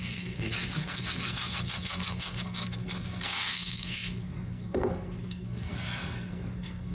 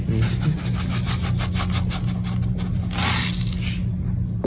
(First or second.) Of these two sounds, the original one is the second